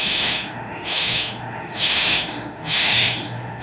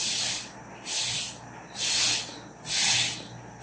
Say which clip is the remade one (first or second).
first